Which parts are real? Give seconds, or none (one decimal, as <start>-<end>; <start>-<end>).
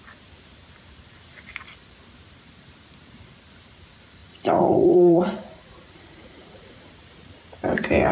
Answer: 0.0-4.2; 6.9-8.1